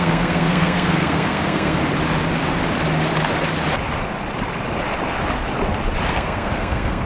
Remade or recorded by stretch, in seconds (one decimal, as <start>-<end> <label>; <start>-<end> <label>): 0.0-1.8 remade; 1.8-6.1 recorded; 6.1-7.1 remade